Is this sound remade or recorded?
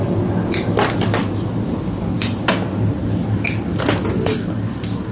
recorded